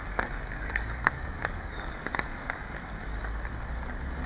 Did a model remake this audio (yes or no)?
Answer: yes